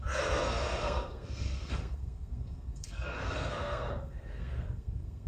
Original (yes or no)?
no